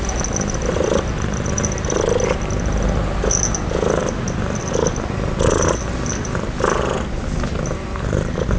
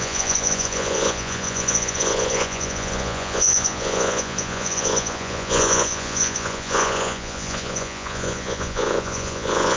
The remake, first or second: second